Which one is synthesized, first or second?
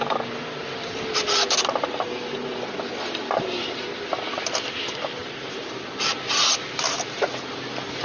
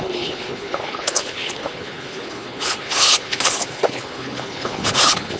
second